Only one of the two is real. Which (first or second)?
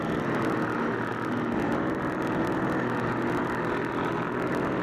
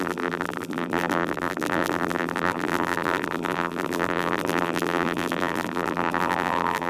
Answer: first